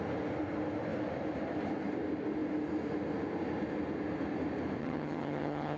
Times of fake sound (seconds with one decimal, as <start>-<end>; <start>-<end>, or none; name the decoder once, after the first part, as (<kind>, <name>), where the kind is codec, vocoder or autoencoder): 4.8-5.8 (vocoder, HiFi-GAN)